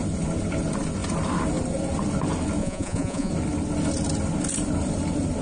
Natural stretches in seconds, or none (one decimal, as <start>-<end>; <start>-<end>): 0.0-2.6; 3.3-5.4